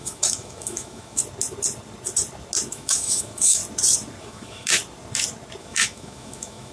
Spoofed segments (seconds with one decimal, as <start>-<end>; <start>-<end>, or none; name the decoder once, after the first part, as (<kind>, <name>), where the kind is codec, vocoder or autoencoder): 0.0-1.2 (autoencoder, DAC-VAE); 2.7-3.6; 4.2-4.8; 5.6-6.7